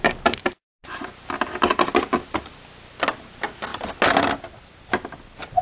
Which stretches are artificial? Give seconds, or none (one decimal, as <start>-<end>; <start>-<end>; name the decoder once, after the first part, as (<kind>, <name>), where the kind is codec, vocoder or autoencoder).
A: none